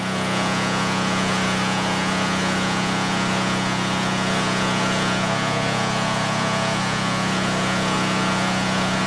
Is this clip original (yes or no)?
no